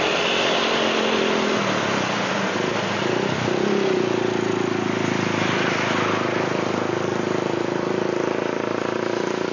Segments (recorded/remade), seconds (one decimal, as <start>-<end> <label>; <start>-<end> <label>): 0.0-7.1 recorded; 7.1-7.6 remade; 7.6-9.5 recorded